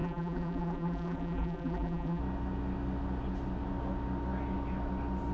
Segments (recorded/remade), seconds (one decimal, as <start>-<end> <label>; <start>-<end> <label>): 0.0-2.2 remade; 2.2-5.3 recorded